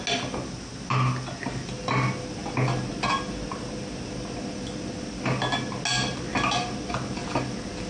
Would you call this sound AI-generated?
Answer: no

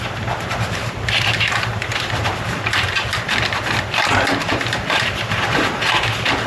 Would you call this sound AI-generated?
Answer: yes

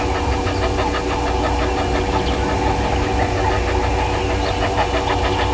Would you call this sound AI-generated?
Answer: no